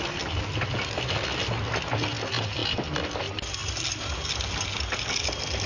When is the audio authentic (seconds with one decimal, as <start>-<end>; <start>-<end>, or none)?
0.0-5.7